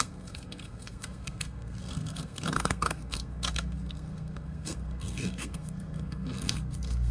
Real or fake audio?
fake